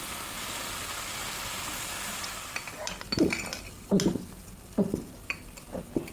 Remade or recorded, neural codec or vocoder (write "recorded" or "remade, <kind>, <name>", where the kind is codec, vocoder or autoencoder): recorded